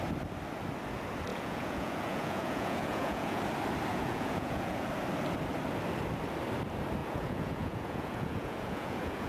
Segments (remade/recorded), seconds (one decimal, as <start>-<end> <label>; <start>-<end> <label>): 0.0-1.3 recorded; 1.3-3.4 remade; 3.4-3.9 recorded; 3.9-4.9 remade; 4.9-7.0 recorded; 7.0-9.3 remade

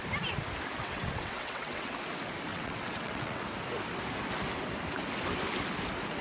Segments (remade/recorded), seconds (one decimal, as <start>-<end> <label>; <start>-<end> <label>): 0.0-0.8 recorded; 0.8-1.9 remade; 1.9-2.5 recorded; 2.5-3.4 remade; 3.4-6.2 recorded

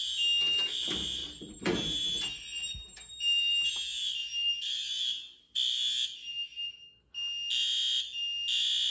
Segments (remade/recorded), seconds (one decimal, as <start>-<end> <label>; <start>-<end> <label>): 0.0-1.2 recorded; 1.2-3.7 remade; 3.7-8.9 recorded

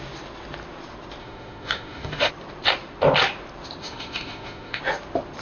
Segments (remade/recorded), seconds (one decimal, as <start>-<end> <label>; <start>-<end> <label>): 0.0-1.2 recorded; 1.2-2.3 remade; 2.3-3.8 recorded; 3.8-4.8 remade; 4.8-5.4 recorded

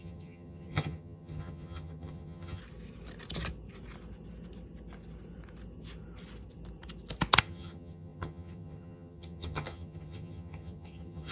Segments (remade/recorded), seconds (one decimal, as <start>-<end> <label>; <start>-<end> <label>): 0.0-2.6 remade; 2.6-7.4 recorded; 7.4-11.3 remade